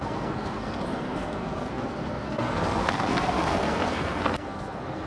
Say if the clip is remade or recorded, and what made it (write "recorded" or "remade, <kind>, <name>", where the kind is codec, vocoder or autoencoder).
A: remade, codec, SNAC